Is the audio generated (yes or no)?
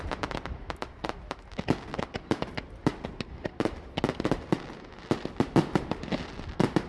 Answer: no